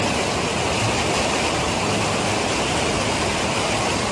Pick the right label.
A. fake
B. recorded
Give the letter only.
B